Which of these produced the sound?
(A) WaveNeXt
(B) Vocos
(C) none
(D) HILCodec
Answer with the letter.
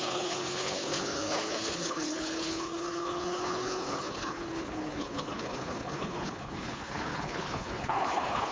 D